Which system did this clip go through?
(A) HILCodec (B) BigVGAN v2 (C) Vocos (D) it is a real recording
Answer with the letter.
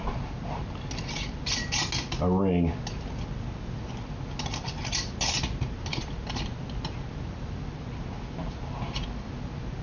D